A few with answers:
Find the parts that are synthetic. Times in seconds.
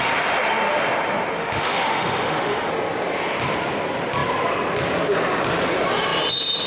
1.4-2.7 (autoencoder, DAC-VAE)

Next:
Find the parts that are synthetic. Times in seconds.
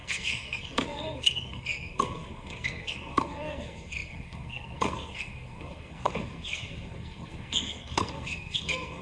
0.0-9.0 (codec, SNAC)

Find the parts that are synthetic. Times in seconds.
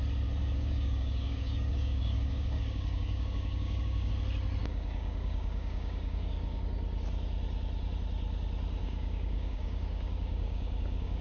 0.4-4.1 (codec, DAC); 4.6-6.6; 8.8-11.2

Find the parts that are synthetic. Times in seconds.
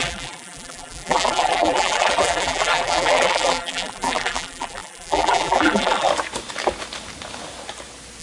0.0-6.1 (vocoder, BigVGAN v2)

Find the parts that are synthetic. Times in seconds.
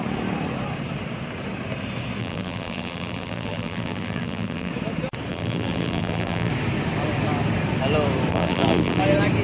2.2-4.7 (vocoder, BigVGAN v2); 5.3-6.5; 8.3-9.0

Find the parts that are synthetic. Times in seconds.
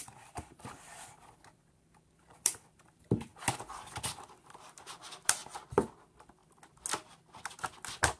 0.0-5.4 (vocoder, BigVGAN v2); 5.9-6.4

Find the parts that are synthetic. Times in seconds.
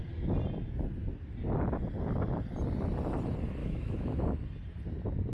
3.6-4.2 (autoencoder, DAC-VAE)